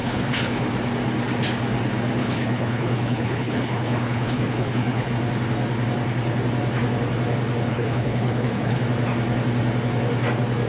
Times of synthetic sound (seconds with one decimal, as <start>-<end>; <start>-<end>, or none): 0.0-0.6; 2.2-5.1; 7.7-8.8